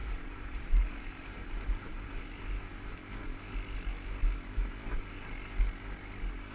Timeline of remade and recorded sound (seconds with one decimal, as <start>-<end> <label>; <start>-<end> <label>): 0.0-2.4 remade; 2.4-6.5 recorded